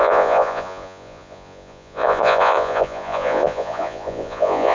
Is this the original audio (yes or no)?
no